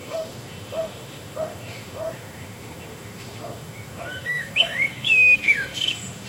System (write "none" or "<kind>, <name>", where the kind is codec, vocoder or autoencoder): autoencoder, DAC-VAE